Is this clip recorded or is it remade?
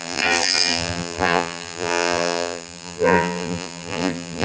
remade